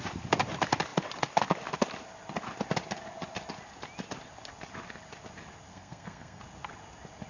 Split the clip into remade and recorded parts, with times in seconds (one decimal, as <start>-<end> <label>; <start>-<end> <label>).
0.0-5.7 recorded; 5.7-6.4 remade; 6.4-7.3 recorded